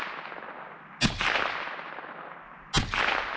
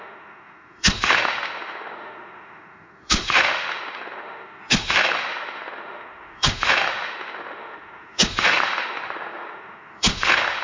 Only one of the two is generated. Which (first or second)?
second